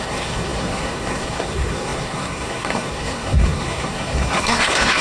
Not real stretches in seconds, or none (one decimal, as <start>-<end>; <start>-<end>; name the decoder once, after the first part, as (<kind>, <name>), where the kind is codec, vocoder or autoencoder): 0.0-5.0 (codec, SNAC)